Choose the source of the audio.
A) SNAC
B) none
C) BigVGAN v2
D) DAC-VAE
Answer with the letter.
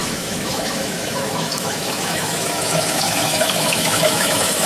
D